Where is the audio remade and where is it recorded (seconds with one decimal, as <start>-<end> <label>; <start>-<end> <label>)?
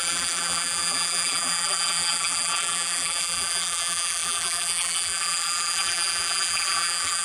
0.0-7.2 remade